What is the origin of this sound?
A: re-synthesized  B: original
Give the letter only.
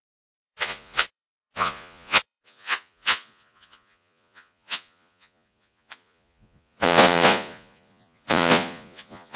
A